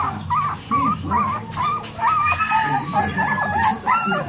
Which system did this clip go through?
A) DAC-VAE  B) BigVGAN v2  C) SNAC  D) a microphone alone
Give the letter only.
D